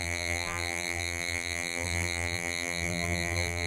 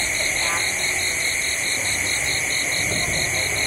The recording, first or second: second